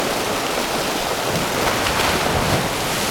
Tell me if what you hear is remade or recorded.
recorded